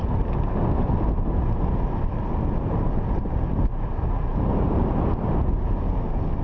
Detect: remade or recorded recorded